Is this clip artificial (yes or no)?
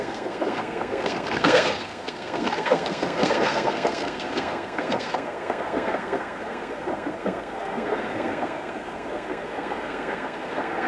yes